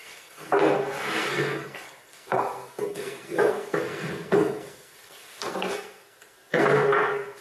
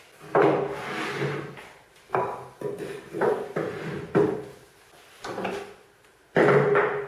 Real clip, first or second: second